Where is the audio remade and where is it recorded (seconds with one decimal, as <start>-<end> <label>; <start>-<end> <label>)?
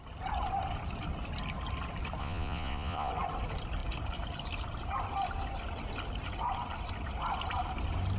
0.0-2.2 recorded; 2.2-3.1 remade; 3.1-8.2 recorded